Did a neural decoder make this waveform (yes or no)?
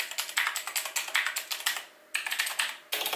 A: no